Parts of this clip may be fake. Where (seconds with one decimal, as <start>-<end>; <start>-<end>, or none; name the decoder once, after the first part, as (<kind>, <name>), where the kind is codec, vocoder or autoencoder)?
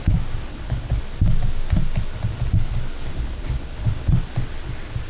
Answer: 0.5-1.0 (codec, HILCodec); 3.1-4.2